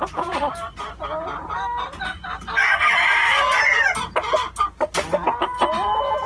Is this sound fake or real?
real